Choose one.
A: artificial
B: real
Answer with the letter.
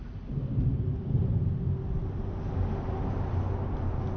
B